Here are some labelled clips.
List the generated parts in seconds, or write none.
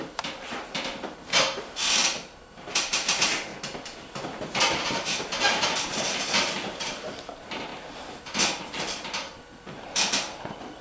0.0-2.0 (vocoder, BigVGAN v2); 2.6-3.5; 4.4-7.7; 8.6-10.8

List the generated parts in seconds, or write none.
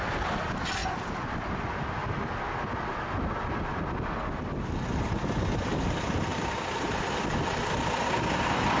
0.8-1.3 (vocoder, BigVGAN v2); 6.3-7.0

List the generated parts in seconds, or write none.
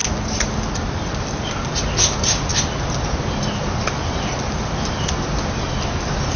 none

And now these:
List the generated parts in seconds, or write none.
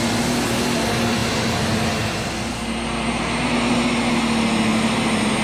none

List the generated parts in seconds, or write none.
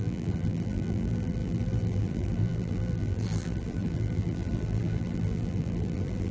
0.0-6.3 (vocoder, BigVGAN v2)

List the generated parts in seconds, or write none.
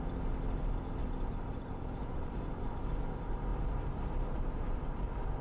1.0-2.9 (vocoder, BigVGAN v2); 3.5-4.8